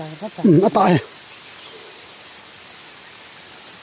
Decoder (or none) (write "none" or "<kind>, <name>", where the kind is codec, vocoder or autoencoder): none